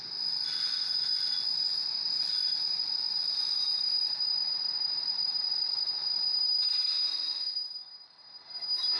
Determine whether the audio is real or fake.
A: real